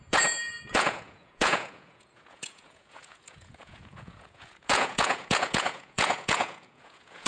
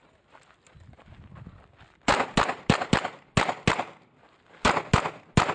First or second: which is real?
second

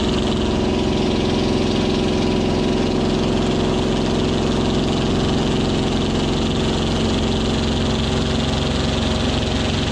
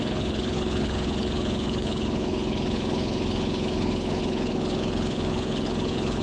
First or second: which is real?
first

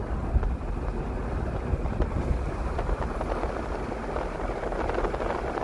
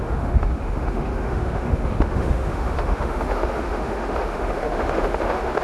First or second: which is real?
first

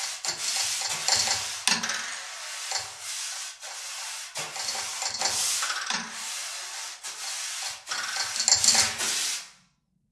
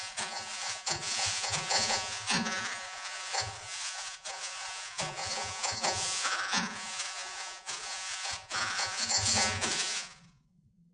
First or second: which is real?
first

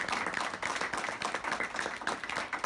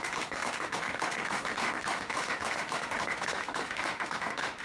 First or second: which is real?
first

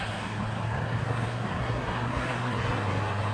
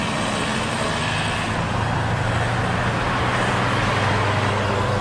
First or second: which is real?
second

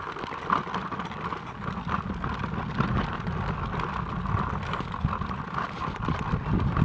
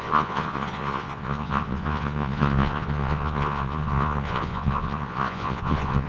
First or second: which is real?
first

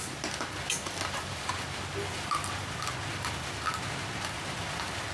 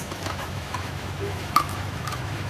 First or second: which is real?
first